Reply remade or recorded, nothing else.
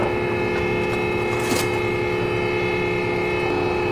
recorded